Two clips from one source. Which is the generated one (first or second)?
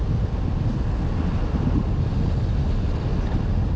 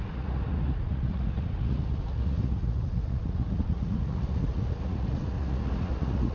second